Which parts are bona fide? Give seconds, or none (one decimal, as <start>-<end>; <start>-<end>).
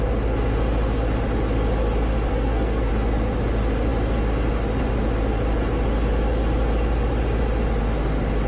0.0-2.3; 2.9-8.5